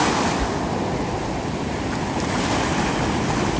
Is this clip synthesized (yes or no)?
no